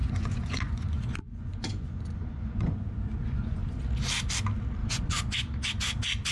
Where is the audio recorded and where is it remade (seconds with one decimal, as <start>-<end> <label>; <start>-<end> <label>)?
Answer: 0.0-3.8 remade; 3.8-4.8 recorded; 4.8-5.8 remade; 5.8-6.3 recorded